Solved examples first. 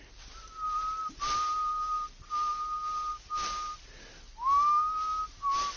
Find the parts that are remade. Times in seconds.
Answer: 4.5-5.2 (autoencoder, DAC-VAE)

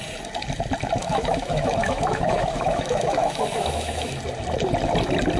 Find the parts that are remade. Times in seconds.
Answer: 1.0-4.2 (autoencoder, DAC-VAE)

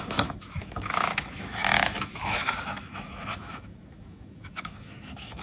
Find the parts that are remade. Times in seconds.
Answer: 0.0-5.4 (autoencoder, DAC-VAE)

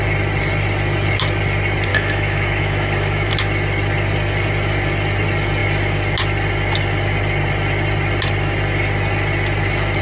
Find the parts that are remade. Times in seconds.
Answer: 1.9-3.3 (autoencoder, DAC-VAE)

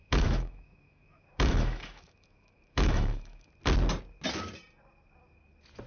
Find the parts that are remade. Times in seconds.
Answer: 0.0-3.5 (autoencoder, DAC-VAE)

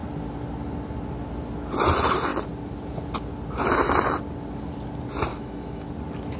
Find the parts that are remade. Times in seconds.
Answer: 5.3-5.9 (autoencoder, DAC-VAE)

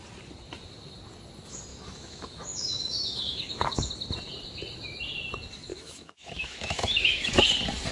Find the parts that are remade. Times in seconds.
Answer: 1.7-3.9 (autoencoder, DAC-VAE); 5.7-7.4

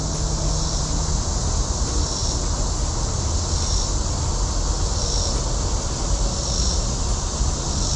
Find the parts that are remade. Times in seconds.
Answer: none